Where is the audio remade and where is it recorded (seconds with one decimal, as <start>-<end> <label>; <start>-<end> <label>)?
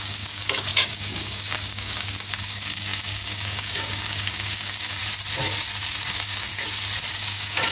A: 0.0-5.0 remade; 5.0-6.1 recorded; 6.1-6.5 remade; 6.5-7.1 recorded; 7.1-7.7 remade